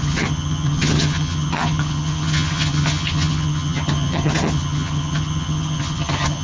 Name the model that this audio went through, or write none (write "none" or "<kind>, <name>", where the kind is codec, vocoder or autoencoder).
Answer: vocoder, HiFi-GAN